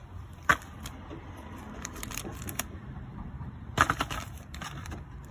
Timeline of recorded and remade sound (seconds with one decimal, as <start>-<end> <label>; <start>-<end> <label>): 0.0-0.5 remade; 0.5-1.8 recorded; 1.8-5.3 remade